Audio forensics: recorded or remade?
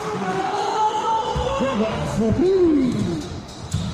remade